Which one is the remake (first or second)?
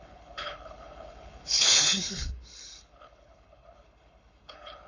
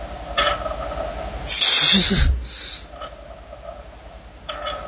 first